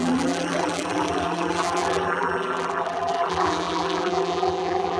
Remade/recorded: remade